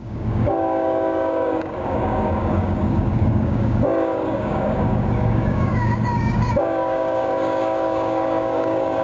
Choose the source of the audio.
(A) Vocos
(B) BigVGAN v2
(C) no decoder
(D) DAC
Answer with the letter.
D